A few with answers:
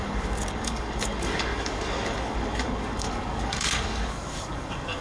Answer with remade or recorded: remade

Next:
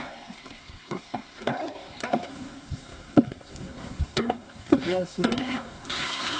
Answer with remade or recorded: remade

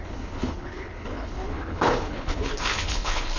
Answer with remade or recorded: remade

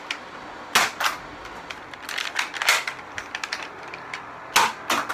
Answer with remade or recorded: recorded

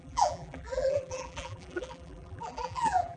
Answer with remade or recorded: remade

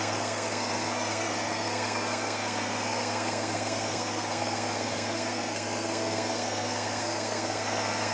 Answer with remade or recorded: remade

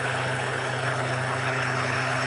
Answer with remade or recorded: remade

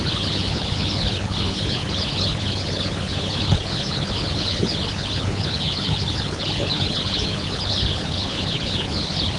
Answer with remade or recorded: remade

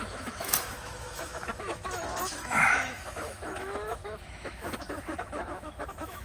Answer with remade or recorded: remade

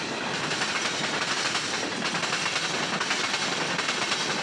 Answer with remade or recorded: recorded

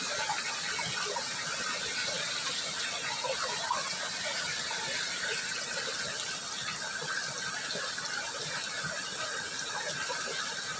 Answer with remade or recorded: recorded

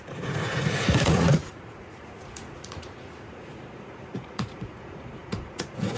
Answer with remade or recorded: remade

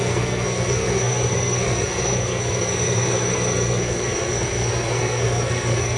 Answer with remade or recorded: remade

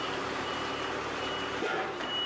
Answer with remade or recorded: remade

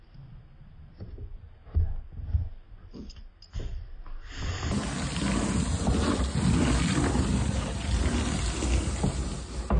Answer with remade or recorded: recorded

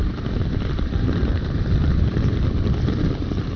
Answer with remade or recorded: remade